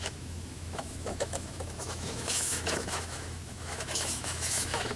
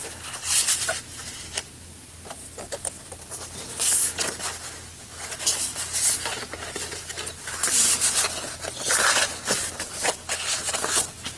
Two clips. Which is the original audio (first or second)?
second